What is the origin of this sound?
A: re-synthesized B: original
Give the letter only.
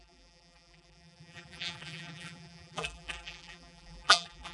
A